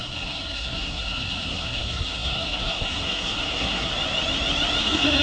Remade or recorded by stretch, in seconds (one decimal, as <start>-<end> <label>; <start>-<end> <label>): 0.0-3.9 remade; 3.9-4.8 recorded; 4.8-5.2 remade